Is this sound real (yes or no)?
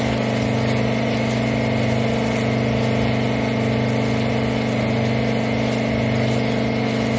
yes